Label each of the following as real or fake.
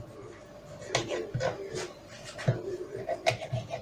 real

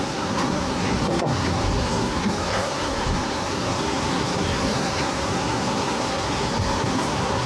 fake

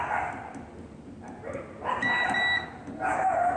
real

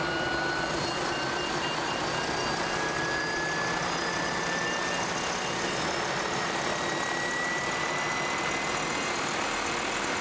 real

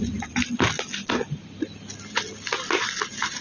real